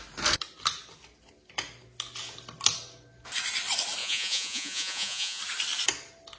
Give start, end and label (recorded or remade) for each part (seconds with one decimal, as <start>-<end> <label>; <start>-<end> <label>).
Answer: 0.0-4.0 recorded; 4.0-5.4 remade; 5.4-6.4 recorded